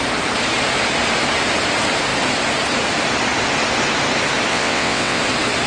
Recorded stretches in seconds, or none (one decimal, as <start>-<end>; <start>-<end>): 0.0-4.5; 5.2-5.7